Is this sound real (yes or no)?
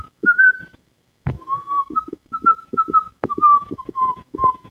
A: no